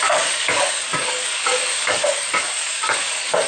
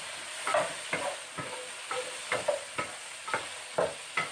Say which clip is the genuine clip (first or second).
second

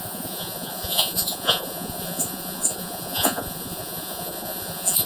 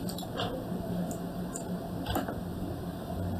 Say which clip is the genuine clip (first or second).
second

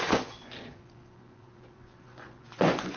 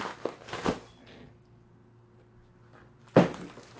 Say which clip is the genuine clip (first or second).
second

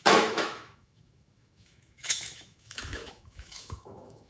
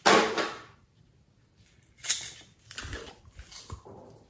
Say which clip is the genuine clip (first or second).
second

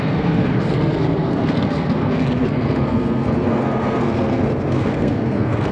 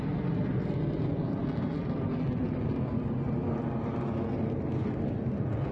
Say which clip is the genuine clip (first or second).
second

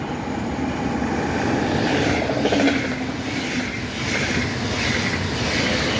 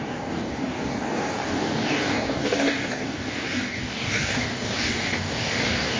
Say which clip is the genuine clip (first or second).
first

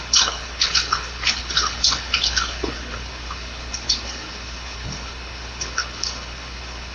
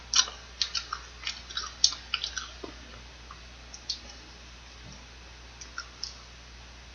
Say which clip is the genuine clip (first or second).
second